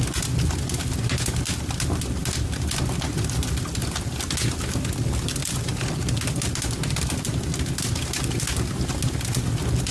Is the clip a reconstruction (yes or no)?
no